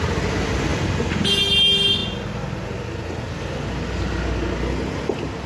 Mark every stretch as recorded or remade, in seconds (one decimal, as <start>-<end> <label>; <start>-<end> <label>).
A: 0.0-5.5 recorded